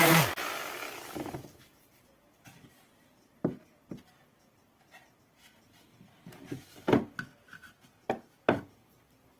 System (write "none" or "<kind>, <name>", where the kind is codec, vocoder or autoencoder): none